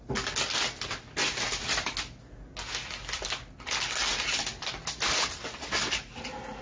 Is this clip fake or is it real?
real